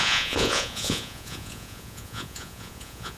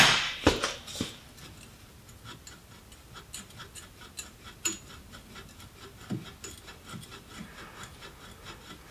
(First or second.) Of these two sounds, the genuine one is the second